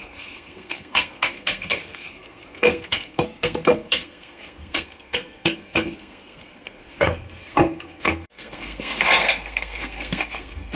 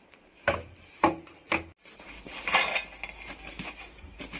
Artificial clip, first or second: first